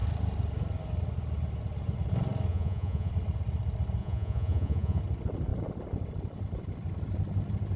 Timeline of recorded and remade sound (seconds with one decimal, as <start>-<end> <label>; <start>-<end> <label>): 0.0-2.5 recorded; 2.5-3.1 remade; 3.1-4.0 recorded; 4.0-5.0 remade; 5.0-7.8 recorded